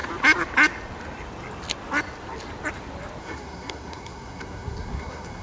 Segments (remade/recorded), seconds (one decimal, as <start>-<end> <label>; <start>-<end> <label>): 0.0-3.2 recorded; 3.2-5.4 remade